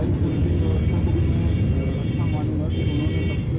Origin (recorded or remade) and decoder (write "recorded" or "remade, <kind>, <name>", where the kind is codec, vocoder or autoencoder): recorded